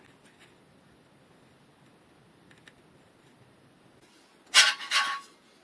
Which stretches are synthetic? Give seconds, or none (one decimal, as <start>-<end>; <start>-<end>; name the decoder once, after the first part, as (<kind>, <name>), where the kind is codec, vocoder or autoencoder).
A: none